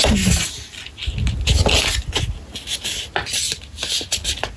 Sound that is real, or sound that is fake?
real